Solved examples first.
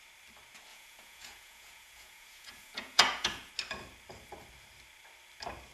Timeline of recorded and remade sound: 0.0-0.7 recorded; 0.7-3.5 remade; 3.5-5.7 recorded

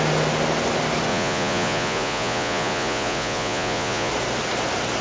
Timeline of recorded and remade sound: 0.0-1.1 recorded; 1.1-4.1 remade; 4.1-5.0 recorded

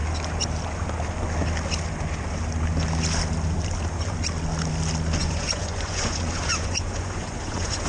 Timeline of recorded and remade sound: 0.0-5.2 recorded; 5.2-7.9 remade

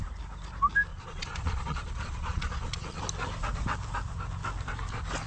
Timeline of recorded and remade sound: 0.0-0.9 recorded; 0.9-3.0 remade; 3.0-5.3 recorded

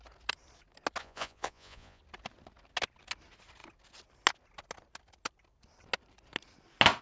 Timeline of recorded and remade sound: 0.0-1.0 recorded; 1.0-2.0 remade; 2.0-7.0 recorded